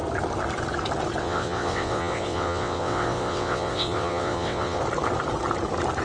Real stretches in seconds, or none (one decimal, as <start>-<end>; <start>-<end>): 0.0-1.2; 4.8-6.0